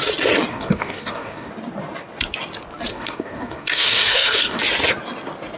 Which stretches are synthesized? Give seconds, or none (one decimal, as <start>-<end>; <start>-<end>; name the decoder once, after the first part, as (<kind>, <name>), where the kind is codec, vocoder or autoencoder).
0.5-1.5 (codec, DAC); 2.9-4.6